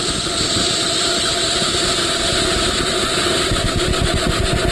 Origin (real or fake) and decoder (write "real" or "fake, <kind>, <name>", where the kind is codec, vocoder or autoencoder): real